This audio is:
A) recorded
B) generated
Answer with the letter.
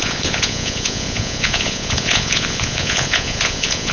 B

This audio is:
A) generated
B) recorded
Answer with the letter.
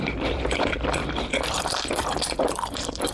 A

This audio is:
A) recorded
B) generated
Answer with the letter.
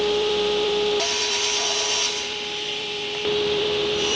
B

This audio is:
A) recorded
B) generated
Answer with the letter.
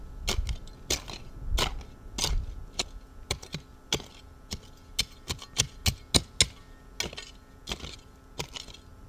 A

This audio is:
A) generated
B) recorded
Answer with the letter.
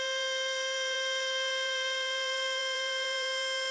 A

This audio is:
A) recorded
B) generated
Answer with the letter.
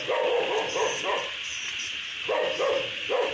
A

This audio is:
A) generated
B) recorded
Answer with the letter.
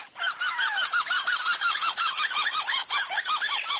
B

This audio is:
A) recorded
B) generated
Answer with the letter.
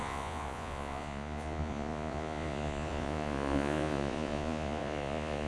B